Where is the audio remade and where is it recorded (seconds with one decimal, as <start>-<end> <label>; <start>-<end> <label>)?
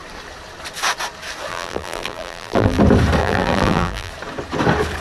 0.0-1.5 recorded; 1.5-2.8 remade; 2.8-3.2 recorded; 3.2-4.1 remade; 4.1-5.0 recorded